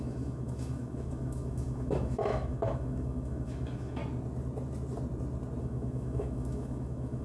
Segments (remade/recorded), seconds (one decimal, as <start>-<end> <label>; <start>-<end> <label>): 0.0-4.0 remade; 4.0-5.6 recorded; 5.6-7.2 remade